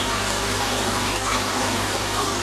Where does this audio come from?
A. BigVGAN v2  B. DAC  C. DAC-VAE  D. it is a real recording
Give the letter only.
B